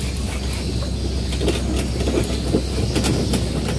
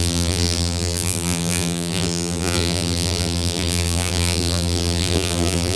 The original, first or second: first